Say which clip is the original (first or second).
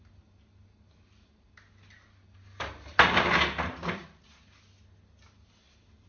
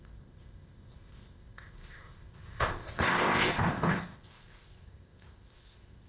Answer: first